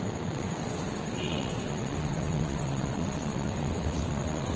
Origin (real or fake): fake